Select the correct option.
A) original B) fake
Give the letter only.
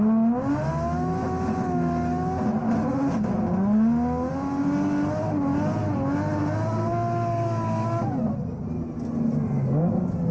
A